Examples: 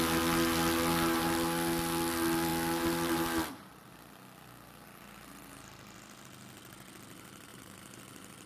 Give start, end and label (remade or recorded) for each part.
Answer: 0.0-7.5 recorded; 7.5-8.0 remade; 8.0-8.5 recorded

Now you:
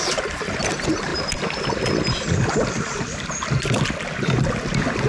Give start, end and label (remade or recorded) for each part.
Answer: 0.0-5.1 recorded